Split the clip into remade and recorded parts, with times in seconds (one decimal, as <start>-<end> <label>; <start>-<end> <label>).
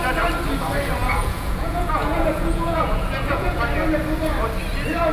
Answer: 0.0-1.0 recorded; 1.0-3.6 remade; 3.6-5.1 recorded